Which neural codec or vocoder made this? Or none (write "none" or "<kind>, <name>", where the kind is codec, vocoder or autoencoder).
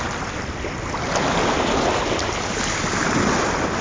none